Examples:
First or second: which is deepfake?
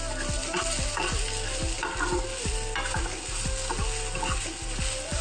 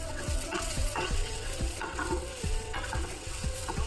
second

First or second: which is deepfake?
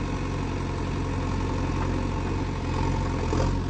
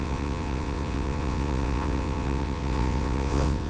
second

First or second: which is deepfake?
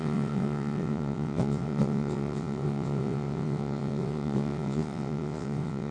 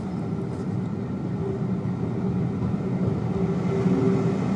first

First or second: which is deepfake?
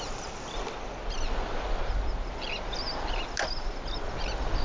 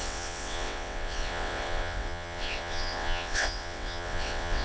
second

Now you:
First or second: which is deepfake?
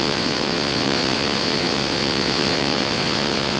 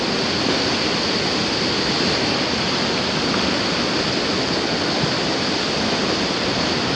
first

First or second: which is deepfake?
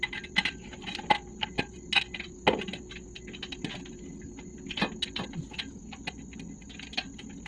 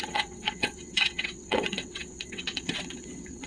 second